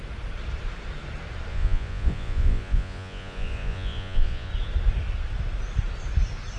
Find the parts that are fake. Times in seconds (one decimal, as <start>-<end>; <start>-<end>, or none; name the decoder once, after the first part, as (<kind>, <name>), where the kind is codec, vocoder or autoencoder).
1.5-4.5 (vocoder, Vocos)